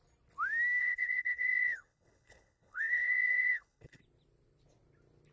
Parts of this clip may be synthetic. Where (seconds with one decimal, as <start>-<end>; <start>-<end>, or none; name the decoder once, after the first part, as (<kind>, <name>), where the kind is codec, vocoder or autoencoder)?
0.8-4.0 (codec, HILCodec)